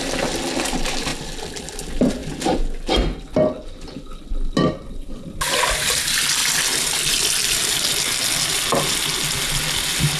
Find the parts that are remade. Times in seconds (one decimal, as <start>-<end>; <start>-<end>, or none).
none